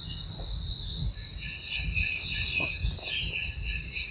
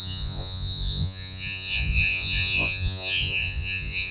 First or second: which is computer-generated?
second